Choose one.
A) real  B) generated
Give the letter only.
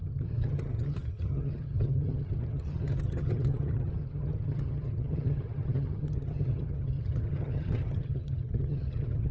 B